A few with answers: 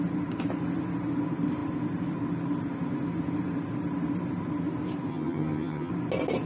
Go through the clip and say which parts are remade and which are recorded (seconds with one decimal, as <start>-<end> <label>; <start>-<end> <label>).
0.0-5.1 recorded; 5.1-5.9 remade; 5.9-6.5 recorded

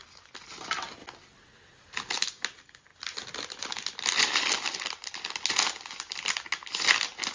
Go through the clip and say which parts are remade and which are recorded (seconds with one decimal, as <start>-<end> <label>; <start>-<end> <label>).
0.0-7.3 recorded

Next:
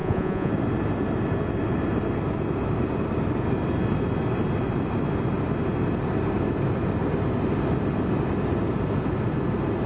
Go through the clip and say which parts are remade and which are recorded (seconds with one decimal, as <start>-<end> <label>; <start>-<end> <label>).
0.0-0.5 remade; 0.5-9.9 recorded

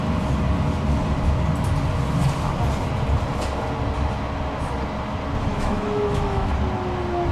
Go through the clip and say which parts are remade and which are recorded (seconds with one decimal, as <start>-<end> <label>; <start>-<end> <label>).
0.0-5.5 recorded; 5.5-6.5 remade; 6.5-7.3 recorded